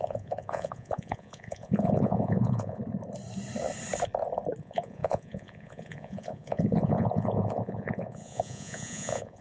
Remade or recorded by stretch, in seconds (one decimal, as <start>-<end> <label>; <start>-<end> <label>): 0.0-2.8 remade; 2.8-4.6 recorded; 4.6-9.4 remade